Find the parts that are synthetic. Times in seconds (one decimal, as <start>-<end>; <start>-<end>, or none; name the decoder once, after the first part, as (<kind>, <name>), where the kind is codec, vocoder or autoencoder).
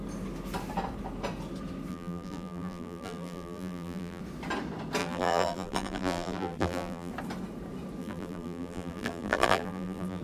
1.9-4.2 (vocoder, BigVGAN v2); 5.0-7.1; 8.0-10.2